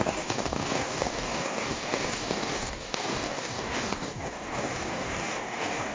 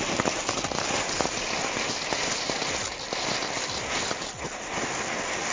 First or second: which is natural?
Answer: second